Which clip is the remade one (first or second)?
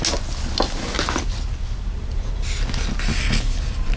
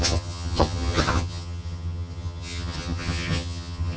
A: second